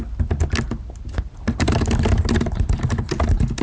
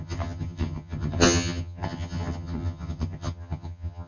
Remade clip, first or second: second